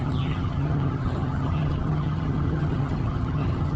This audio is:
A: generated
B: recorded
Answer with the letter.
A